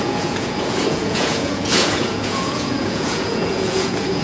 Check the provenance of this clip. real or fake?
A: fake